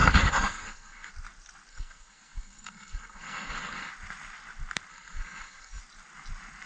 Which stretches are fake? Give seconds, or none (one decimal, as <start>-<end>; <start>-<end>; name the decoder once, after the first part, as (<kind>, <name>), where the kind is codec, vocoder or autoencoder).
0.0-1.1 (codec, SNAC); 1.7-3.9; 4.9-5.8